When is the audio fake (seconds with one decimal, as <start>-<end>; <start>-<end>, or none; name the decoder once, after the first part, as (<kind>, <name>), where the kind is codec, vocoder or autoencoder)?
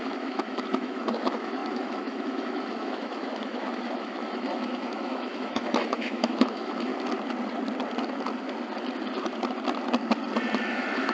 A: 0.0-6.9 (autoencoder, DAC-VAE); 10.6-11.1